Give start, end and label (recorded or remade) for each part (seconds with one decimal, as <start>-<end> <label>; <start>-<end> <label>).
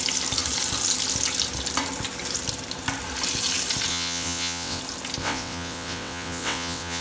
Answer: 0.0-3.9 recorded; 3.9-4.8 remade; 4.8-5.2 recorded; 5.2-7.0 remade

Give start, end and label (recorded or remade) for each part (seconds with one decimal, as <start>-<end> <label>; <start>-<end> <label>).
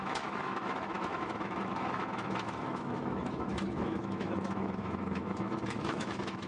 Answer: 0.0-6.5 remade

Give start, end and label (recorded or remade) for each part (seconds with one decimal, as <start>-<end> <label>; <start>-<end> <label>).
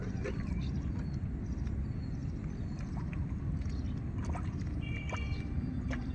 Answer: 0.0-0.7 remade; 0.7-6.1 recorded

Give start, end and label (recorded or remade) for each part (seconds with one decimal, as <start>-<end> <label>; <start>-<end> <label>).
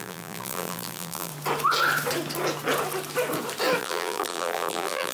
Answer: 0.0-1.3 remade; 1.3-3.8 recorded; 3.8-5.1 remade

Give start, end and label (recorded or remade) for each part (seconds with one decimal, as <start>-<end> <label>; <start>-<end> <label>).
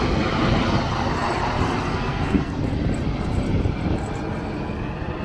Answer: 0.0-1.9 recorded; 1.9-2.6 remade; 2.6-5.2 recorded